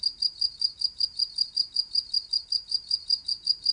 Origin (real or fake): fake